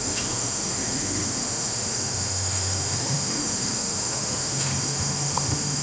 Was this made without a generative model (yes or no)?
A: no